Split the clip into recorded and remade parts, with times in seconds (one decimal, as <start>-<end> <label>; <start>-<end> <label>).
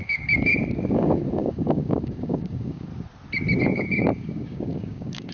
0.0-2.9 remade; 2.9-3.6 recorded; 3.6-5.3 remade